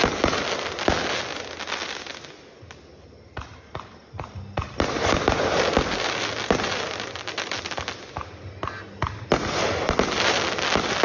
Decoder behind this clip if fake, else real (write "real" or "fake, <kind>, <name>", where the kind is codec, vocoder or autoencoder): real